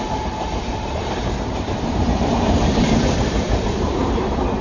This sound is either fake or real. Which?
fake